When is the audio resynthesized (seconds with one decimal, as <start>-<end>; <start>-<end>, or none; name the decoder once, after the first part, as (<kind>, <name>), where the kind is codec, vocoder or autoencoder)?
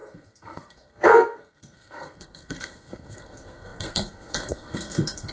0.0-5.3 (codec, SNAC)